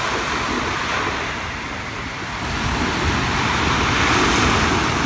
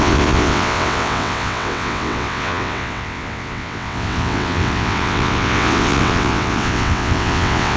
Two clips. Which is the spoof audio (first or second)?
second